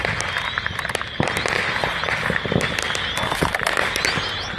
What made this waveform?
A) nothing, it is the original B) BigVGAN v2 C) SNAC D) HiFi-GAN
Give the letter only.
A